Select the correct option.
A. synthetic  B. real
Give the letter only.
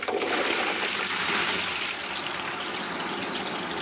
A